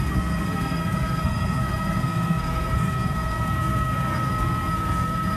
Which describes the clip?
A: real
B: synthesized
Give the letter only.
B